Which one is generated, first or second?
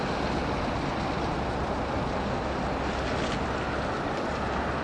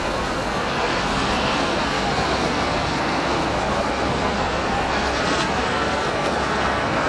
second